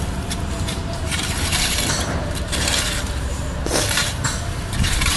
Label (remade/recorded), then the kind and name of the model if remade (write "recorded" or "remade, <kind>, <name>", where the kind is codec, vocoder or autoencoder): remade, vocoder, BigVGAN v2